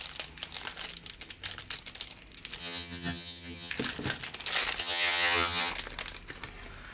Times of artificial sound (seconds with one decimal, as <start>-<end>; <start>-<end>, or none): 2.6-3.7; 4.8-5.7